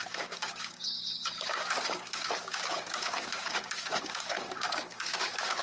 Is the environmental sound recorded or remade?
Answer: remade